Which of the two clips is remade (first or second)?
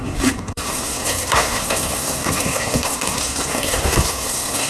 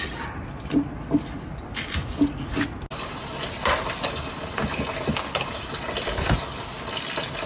first